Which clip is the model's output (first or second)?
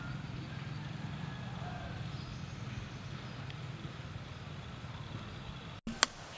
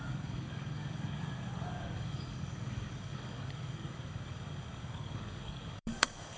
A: second